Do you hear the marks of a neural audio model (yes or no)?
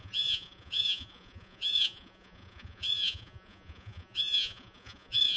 yes